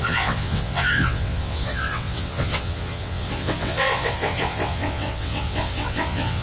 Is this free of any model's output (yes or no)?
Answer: no